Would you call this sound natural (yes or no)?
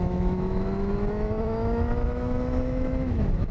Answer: no